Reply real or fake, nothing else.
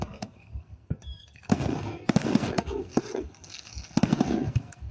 fake